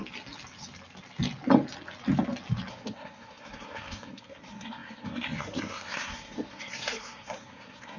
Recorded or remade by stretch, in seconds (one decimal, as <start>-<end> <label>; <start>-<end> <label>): 0.0-2.7 recorded; 2.7-8.0 remade